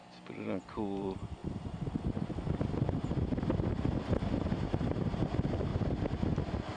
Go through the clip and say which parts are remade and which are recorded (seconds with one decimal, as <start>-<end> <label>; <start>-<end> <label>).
0.0-0.7 recorded; 0.7-1.4 remade; 1.4-4.5 recorded; 4.5-5.7 remade; 5.7-6.8 recorded